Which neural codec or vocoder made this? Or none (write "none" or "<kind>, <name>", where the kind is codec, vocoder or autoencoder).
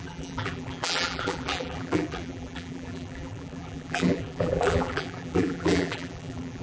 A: vocoder, BigVGAN v2